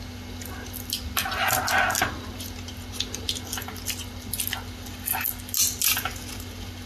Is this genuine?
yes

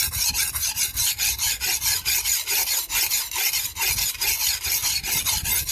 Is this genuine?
yes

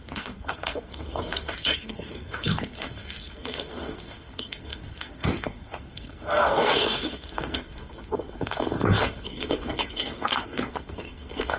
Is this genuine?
no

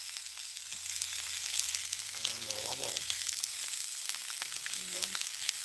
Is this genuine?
no